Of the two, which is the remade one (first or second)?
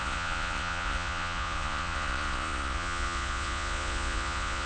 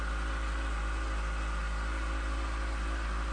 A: first